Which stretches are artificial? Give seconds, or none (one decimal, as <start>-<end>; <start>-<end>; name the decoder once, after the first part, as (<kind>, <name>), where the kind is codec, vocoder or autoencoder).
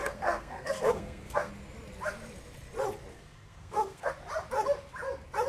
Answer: 0.0-1.5 (codec, SNAC); 3.1-4.1